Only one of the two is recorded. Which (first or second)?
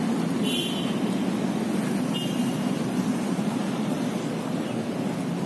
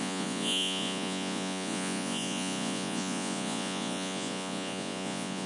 first